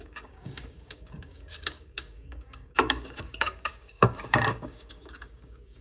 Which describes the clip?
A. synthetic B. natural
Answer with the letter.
A